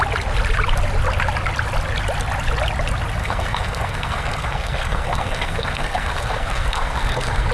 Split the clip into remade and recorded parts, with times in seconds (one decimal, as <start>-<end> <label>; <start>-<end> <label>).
0.0-3.2 recorded; 3.2-7.5 remade